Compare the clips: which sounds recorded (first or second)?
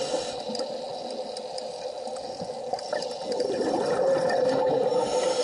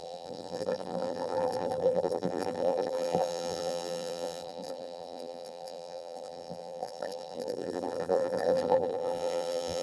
first